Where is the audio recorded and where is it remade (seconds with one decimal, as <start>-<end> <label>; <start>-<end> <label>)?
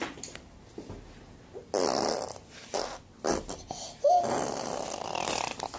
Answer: 0.0-5.8 recorded